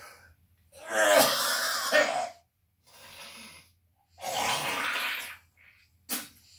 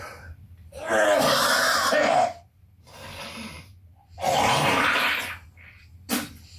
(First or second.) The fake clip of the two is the second